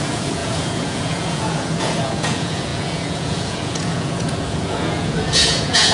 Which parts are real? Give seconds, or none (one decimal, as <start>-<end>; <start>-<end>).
none